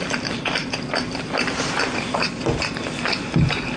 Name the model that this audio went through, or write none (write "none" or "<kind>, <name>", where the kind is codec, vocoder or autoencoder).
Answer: vocoder, BigVGAN v2